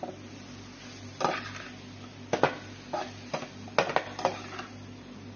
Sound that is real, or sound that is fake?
real